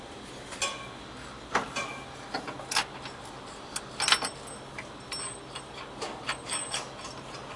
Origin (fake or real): real